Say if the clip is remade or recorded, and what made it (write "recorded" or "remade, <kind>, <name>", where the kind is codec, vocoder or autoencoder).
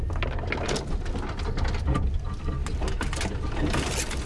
recorded